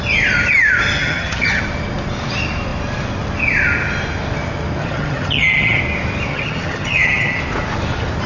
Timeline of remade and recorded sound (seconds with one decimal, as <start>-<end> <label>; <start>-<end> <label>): 0.0-1.0 recorded; 1.0-1.6 remade; 1.6-4.8 recorded; 4.8-5.8 remade; 5.8-6.3 recorded; 6.3-7.4 remade; 7.4-8.3 recorded

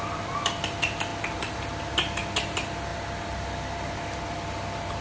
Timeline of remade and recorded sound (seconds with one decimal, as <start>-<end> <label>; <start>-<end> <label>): 0.0-5.0 recorded

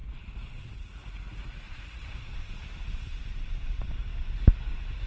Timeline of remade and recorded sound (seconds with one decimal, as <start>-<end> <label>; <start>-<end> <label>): 0.0-2.5 remade; 2.5-5.1 recorded

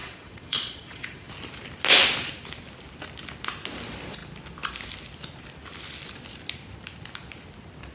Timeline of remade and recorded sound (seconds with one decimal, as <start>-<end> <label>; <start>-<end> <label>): 0.0-1.3 remade; 1.3-7.9 recorded